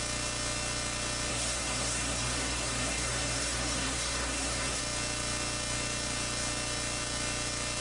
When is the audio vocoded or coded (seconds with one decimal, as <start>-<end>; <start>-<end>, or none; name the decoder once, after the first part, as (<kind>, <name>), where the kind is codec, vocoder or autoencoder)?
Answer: 1.3-4.8 (codec, SNAC)